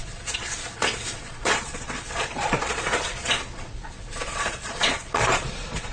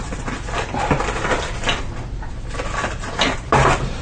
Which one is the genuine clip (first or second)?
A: second